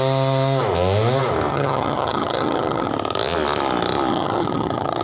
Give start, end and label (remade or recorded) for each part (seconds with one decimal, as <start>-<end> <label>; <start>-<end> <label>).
0.0-1.5 recorded; 1.5-2.9 remade; 2.9-4.1 recorded; 4.1-5.0 remade